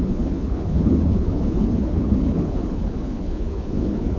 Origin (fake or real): fake